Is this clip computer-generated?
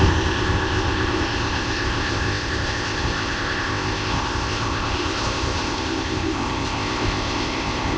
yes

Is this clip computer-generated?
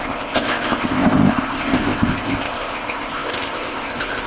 yes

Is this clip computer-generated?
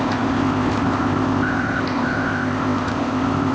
yes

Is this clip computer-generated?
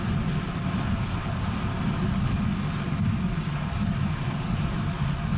no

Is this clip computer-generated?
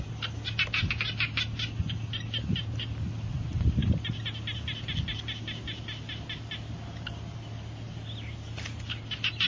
no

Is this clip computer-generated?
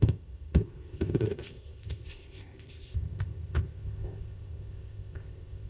yes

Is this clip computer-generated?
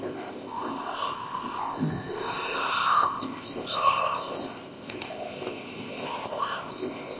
yes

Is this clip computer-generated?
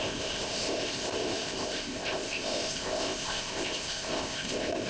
yes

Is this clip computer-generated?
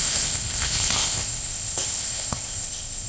yes